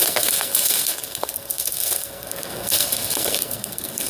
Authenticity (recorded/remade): remade